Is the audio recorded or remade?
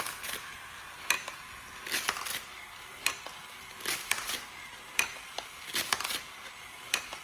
recorded